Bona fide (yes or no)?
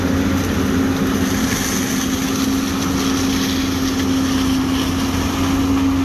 yes